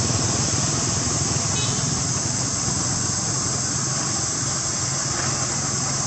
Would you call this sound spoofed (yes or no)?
no